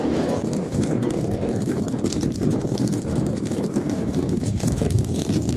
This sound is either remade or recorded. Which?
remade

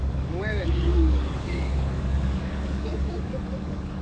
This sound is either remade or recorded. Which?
remade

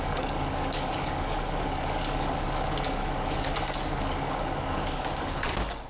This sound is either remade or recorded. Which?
remade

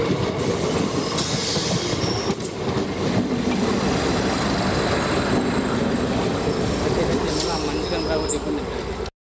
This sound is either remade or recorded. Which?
recorded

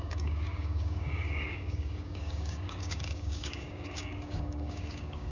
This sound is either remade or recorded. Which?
remade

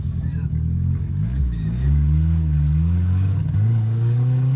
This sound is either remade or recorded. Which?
remade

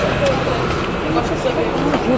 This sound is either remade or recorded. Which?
recorded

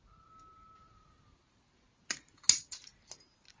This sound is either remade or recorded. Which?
recorded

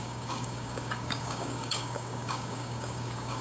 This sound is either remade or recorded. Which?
remade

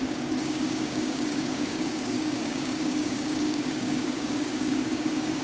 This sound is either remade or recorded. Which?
remade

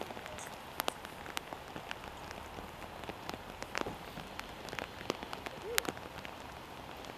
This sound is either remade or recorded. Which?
recorded